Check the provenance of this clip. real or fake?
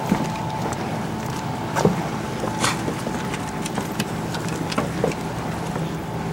real